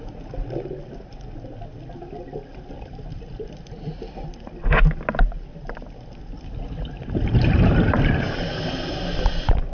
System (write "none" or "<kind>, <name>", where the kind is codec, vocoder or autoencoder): none